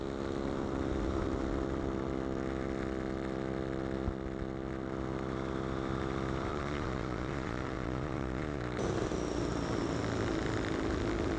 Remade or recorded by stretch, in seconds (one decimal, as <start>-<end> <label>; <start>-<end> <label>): 0.0-6.5 recorded; 6.5-8.6 remade; 8.6-11.4 recorded